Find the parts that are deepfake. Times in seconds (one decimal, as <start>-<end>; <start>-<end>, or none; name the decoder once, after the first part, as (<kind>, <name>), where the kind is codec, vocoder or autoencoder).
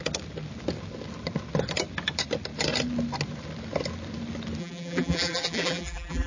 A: 4.6-6.3 (vocoder, BigVGAN v2)